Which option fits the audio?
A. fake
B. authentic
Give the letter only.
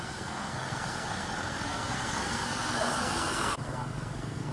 A